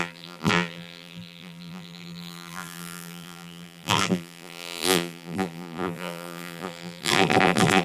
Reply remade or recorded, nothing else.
remade